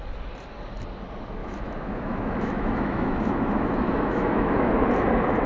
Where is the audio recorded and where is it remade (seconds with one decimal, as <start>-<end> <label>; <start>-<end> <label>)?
0.0-1.4 recorded; 1.4-4.7 remade; 4.7-5.5 recorded